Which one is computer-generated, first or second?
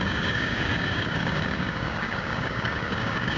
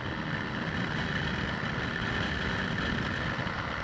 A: first